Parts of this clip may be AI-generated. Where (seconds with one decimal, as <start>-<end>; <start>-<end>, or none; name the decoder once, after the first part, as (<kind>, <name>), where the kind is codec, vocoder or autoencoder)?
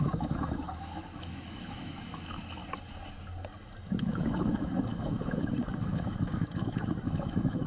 0.0-2.6 (autoencoder, DAC-VAE); 4.0-7.7